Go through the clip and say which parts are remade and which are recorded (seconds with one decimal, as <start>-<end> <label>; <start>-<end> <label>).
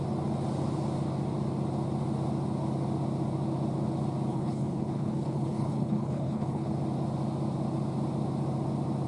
0.0-4.3 recorded; 4.3-6.7 remade; 6.7-9.1 recorded